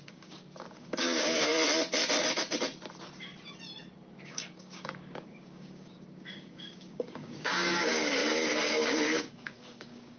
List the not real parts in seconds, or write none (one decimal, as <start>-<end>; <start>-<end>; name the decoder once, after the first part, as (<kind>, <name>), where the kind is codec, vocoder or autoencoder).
0.0-1.5 (codec, DAC); 4.2-10.2